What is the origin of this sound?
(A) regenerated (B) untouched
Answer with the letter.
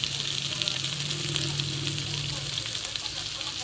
B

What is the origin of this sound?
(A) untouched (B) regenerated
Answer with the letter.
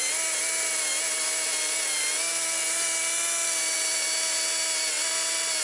A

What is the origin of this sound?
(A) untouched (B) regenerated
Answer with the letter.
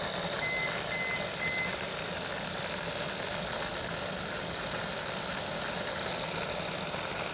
A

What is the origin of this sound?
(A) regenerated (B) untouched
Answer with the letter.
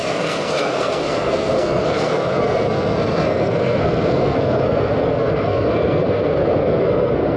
A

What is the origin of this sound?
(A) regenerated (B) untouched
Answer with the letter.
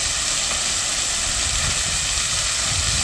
B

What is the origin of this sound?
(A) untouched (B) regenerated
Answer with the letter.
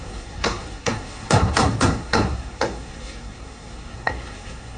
B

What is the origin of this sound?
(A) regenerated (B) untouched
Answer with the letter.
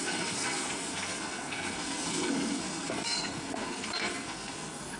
A